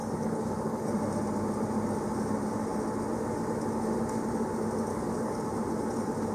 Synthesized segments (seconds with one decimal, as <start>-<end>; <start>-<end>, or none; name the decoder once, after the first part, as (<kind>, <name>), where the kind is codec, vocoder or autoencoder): 0.0-0.9 (codec, DAC); 4.9-5.5